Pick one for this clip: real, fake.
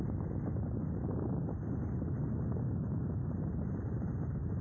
real